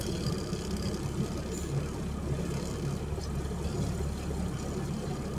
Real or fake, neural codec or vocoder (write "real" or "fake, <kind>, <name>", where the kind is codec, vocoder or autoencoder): real